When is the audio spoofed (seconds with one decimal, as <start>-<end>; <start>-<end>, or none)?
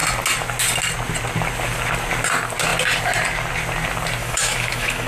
4.2-5.1